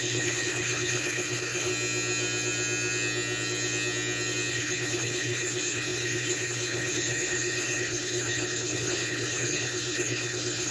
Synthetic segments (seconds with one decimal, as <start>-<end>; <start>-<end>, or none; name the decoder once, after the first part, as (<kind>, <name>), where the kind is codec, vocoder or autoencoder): 0.0-1.7 (codec, HILCodec); 4.5-10.7